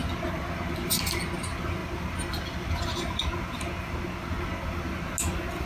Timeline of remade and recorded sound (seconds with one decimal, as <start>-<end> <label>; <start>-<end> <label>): 0.0-5.7 recorded